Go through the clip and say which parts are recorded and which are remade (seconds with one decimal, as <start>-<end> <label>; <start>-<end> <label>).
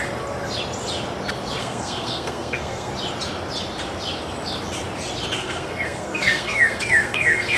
0.0-1.6 recorded; 1.6-2.9 remade; 2.9-5.4 recorded; 5.4-7.6 remade